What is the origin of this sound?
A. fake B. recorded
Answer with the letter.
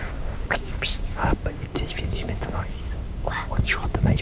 A